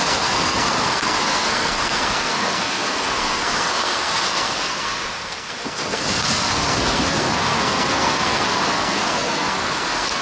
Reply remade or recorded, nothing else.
remade